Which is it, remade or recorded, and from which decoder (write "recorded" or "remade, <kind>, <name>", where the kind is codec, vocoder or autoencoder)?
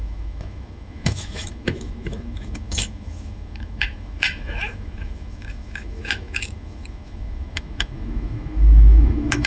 remade, autoencoder, DAC-VAE